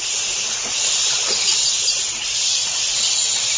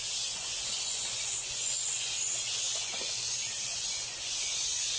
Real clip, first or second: first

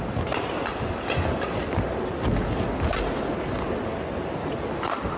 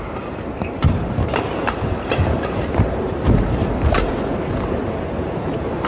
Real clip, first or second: first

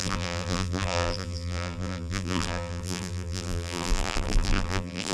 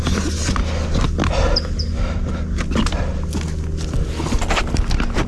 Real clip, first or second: second